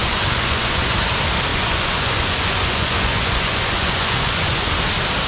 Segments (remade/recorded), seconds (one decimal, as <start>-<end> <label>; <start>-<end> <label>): 0.0-1.1 remade; 1.1-1.5 recorded; 1.5-4.7 remade; 4.7-5.3 recorded